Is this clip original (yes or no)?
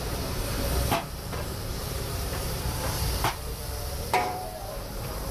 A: no